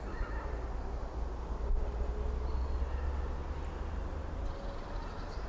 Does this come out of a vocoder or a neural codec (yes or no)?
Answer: no